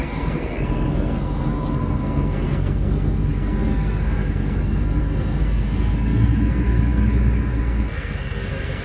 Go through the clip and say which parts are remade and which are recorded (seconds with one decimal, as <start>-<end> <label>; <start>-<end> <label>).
0.0-8.8 remade